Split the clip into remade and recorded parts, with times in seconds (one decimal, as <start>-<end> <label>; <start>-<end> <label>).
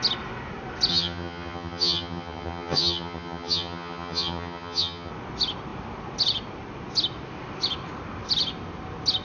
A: 0.0-0.9 recorded; 0.9-5.1 remade; 5.1-9.2 recorded